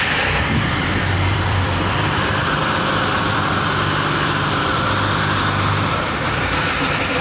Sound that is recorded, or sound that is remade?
remade